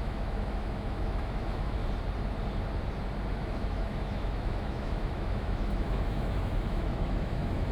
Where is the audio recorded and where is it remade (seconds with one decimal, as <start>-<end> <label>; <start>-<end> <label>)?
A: 0.0-1.8 remade; 1.8-3.3 recorded; 3.3-7.7 remade